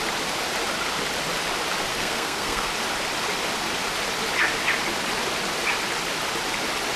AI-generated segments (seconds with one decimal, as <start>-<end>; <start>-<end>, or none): 2.0-2.7